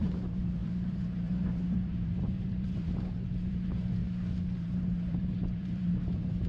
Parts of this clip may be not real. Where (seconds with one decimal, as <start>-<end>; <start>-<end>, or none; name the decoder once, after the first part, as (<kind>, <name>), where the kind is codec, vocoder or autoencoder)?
0.0-4.0 (vocoder, BigVGAN v2); 4.6-6.5